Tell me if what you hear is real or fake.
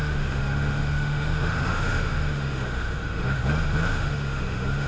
fake